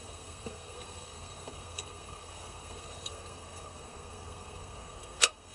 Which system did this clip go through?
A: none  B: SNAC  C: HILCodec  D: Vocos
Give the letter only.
B